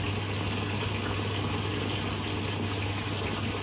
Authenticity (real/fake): real